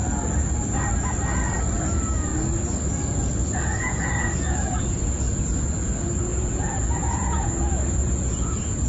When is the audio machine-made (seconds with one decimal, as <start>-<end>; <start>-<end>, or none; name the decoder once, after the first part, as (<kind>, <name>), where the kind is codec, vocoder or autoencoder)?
1.8-2.3 (vocoder, Vocos); 3.7-8.9